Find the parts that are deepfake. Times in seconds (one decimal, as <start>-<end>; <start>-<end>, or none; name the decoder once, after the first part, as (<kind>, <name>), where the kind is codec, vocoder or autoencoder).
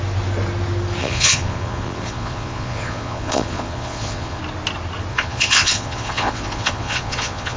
1.0-4.4 (vocoder, Vocos); 5.1-7.6